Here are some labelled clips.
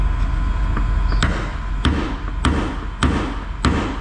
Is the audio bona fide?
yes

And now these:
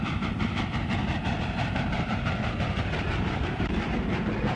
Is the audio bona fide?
no